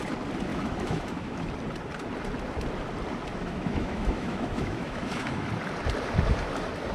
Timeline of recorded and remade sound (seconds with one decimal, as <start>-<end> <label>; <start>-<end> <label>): 0.0-0.5 recorded; 0.5-1.5 remade; 1.5-3.3 recorded; 3.3-5.5 remade; 5.5-6.9 recorded